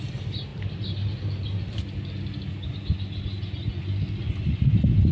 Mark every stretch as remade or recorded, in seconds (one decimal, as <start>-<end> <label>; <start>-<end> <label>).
0.0-5.1 recorded